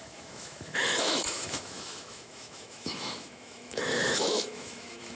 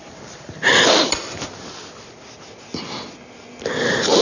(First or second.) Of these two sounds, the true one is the second